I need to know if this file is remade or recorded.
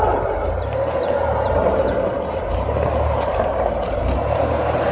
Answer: remade